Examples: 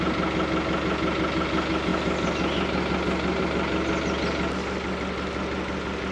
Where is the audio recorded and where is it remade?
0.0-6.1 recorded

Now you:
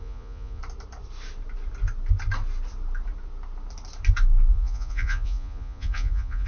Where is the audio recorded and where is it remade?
0.0-0.6 remade; 0.6-4.5 recorded; 4.5-6.5 remade

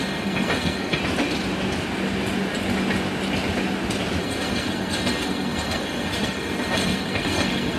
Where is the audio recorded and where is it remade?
0.0-1.0 remade; 1.0-4.2 recorded; 4.2-7.8 remade

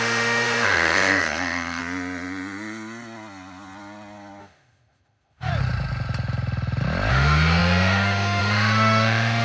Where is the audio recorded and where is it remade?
0.0-1.8 remade; 1.8-4.4 recorded; 4.4-5.5 remade; 5.5-7.1 recorded; 7.1-9.4 remade

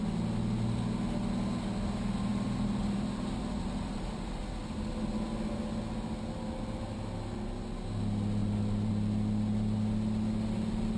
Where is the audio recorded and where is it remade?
0.0-2.3 recorded; 2.3-4.4 remade; 4.4-8.4 recorded; 8.4-8.9 remade; 8.9-11.0 recorded

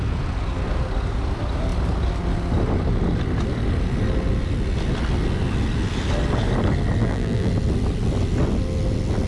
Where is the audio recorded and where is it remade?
0.0-7.0 recorded; 7.0-7.5 remade; 7.5-9.3 recorded